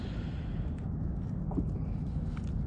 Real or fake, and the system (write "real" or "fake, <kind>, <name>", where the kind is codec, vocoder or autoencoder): real